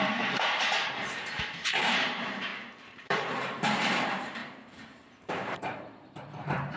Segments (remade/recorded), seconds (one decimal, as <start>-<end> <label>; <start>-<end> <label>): 0.0-2.5 remade; 2.5-3.0 recorded; 3.0-6.8 remade